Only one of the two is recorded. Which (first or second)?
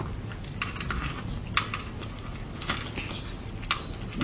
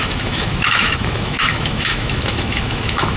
first